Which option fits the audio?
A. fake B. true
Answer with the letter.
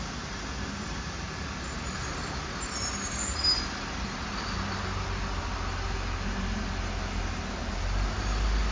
B